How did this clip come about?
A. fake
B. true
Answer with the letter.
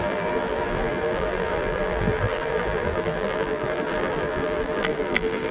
A